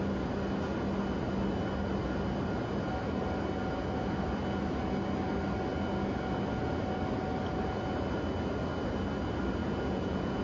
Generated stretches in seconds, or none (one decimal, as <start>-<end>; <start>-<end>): 9.6-10.4

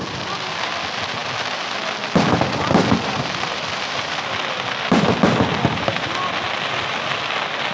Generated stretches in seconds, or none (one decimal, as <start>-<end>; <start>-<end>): none

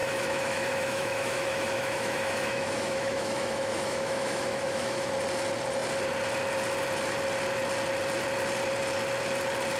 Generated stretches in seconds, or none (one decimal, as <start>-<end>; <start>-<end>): 0.0-5.1

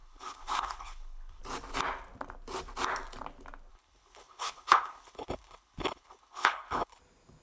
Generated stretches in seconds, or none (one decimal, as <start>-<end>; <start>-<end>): 0.0-1.4; 3.7-7.0

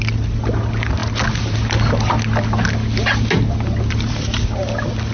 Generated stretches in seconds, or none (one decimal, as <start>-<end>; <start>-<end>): none

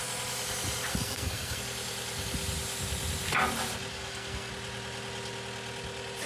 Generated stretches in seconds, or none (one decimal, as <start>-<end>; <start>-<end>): 0.9-1.6; 3.9-4.5